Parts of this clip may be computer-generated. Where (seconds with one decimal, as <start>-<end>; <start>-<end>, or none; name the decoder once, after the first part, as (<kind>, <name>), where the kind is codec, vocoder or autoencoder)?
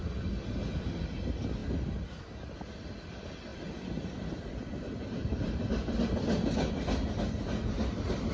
3.5-4.8 (vocoder, BigVGAN v2); 5.2-5.9